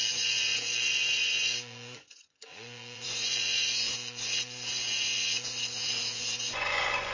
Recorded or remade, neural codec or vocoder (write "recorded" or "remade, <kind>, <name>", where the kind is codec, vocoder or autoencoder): remade, vocoder, Vocos